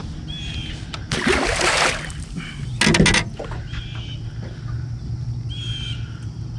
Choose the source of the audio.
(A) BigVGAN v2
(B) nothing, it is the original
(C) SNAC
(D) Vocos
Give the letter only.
B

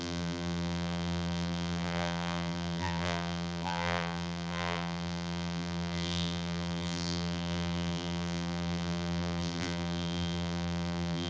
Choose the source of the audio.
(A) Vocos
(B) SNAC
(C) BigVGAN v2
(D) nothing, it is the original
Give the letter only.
C